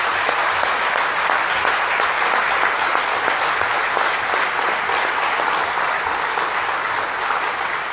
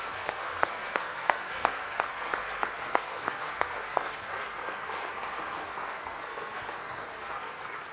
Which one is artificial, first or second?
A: second